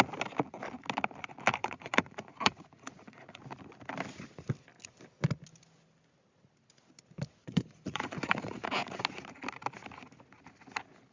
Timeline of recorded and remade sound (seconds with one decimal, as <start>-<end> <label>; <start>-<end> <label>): 0.0-1.6 recorded; 1.6-3.4 remade; 3.4-7.4 recorded; 7.4-9.0 remade; 9.0-11.1 recorded